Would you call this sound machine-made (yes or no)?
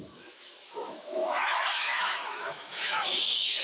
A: yes